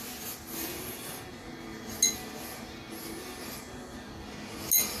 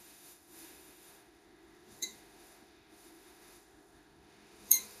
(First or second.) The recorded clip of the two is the first